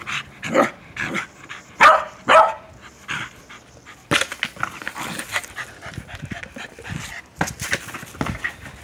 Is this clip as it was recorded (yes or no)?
yes